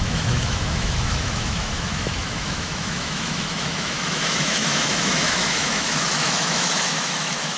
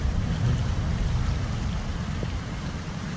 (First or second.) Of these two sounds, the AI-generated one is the first